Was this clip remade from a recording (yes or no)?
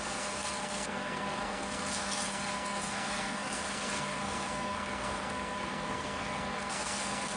yes